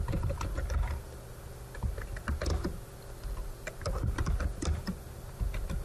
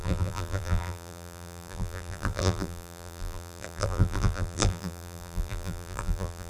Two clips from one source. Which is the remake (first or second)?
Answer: second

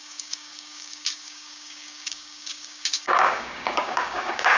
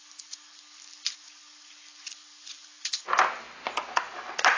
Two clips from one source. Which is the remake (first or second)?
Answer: first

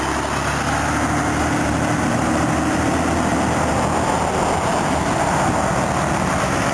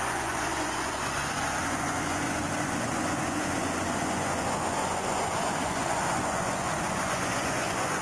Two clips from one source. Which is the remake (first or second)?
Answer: second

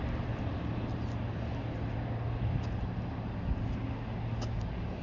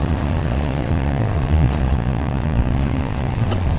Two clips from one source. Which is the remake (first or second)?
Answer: second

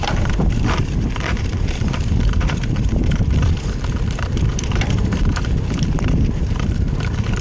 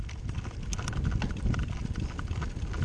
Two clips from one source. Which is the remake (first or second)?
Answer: first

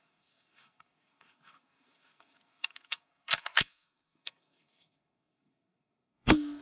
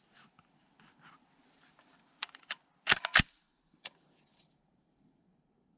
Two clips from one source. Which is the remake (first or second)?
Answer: first